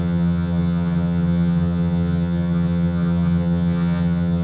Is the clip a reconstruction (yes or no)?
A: yes